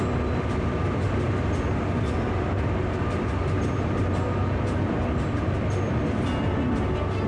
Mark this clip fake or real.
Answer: real